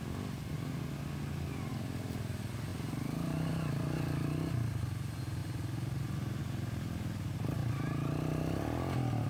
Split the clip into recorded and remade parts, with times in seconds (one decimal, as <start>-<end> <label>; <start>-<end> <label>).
0.0-9.3 recorded